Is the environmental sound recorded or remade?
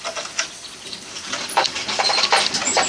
recorded